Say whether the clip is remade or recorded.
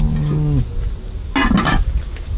recorded